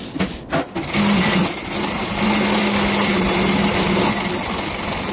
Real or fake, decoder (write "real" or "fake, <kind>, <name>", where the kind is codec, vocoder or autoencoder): real